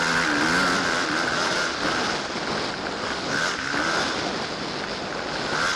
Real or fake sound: real